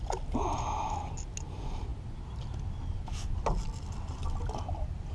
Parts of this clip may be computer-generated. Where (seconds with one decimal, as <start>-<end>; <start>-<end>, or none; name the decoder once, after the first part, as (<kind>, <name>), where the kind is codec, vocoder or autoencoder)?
none